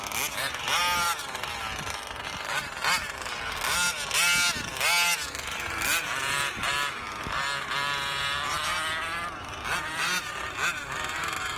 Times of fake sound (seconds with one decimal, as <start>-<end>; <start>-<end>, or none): none